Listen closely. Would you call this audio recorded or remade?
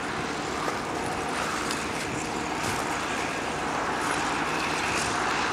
recorded